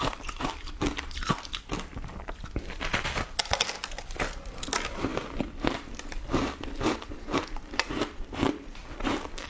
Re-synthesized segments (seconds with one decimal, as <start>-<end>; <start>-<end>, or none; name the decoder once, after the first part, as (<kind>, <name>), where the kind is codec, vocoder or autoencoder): 0.0-1.9 (vocoder, BigVGAN v2); 3.4-5.1; 6.3-9.5